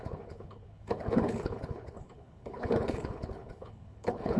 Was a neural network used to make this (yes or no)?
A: yes